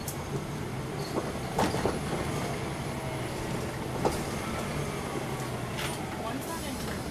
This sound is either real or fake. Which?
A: real